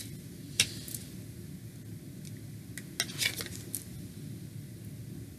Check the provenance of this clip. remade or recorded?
recorded